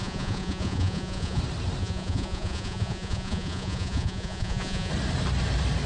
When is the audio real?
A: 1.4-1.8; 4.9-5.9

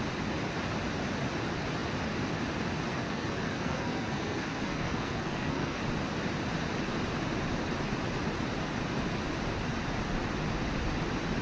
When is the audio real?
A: 0.0-2.9; 5.8-11.4

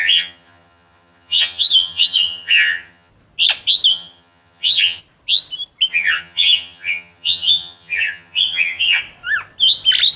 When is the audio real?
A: 3.1-3.9; 5.0-5.9; 9.0-10.2

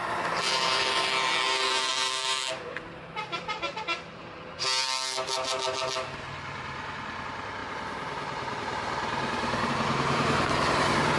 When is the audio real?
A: none